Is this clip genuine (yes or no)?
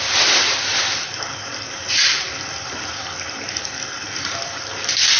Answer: no